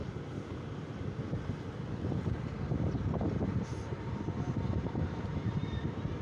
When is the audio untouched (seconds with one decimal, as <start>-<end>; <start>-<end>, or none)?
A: 0.0-3.7